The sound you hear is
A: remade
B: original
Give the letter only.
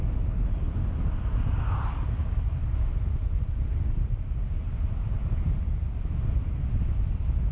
B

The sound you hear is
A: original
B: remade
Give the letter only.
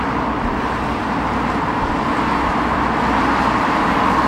A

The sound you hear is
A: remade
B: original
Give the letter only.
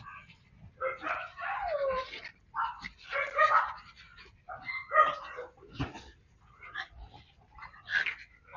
B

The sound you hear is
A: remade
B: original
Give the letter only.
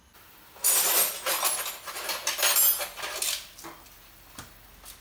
B